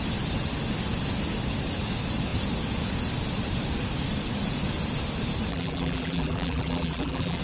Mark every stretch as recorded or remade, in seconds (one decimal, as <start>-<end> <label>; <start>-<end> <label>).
0.0-5.5 recorded; 5.5-7.4 remade